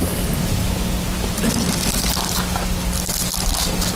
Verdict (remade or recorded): recorded